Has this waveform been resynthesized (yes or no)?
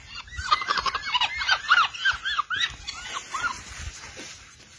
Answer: no